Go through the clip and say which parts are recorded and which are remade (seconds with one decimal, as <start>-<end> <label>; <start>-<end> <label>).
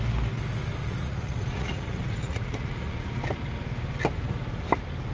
0.0-0.8 recorded; 0.8-3.2 remade; 3.2-5.1 recorded